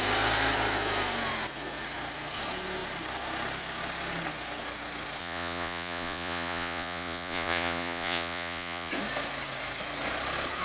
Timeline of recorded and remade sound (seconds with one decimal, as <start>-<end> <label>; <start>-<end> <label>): 0.0-5.2 recorded; 5.2-8.9 remade; 8.9-10.6 recorded